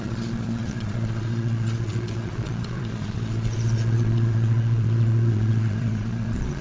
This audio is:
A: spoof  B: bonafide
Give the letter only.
A